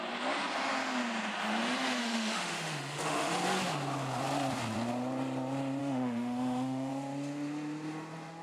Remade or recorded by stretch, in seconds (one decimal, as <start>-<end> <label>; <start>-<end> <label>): 0.0-2.0 recorded; 2.0-3.3 remade; 3.3-5.8 recorded; 5.8-6.9 remade; 6.9-8.4 recorded